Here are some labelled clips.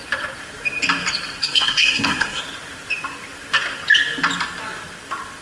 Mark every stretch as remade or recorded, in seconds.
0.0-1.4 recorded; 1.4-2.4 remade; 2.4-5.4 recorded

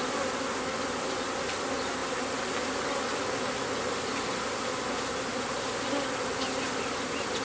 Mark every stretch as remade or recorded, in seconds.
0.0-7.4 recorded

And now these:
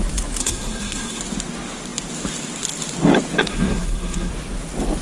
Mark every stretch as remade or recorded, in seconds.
0.0-0.4 recorded; 0.4-1.2 remade; 1.2-3.5 recorded; 3.5-4.3 remade; 4.3-5.0 recorded

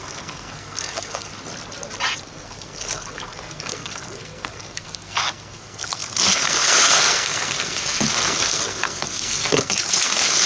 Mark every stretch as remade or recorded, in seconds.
0.0-1.3 remade; 1.3-2.2 recorded; 2.2-10.5 remade

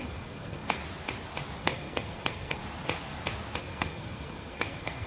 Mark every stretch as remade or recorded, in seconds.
0.0-0.8 remade; 0.8-1.6 recorded; 1.6-2.6 remade; 2.6-3.6 recorded; 3.6-5.1 remade